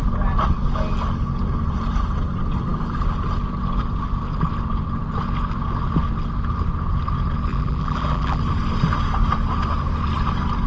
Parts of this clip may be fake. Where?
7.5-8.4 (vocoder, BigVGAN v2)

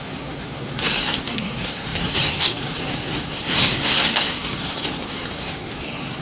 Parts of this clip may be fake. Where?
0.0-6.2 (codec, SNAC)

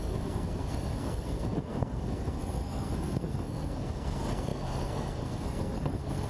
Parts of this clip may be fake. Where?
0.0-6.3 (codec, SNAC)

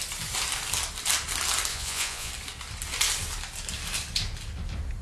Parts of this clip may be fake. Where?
1.7-2.3 (vocoder, Vocos)